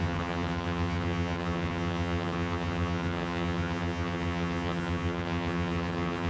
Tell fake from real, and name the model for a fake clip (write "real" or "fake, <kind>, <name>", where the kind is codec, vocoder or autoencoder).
fake, vocoder, HiFi-GAN